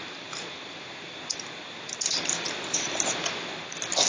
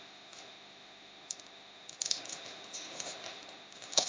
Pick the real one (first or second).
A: first